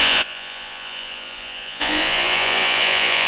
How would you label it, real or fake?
fake